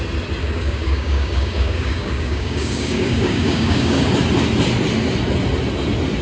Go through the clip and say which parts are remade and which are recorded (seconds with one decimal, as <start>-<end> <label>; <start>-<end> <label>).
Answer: 0.0-0.4 recorded; 0.4-4.1 remade; 4.1-6.2 recorded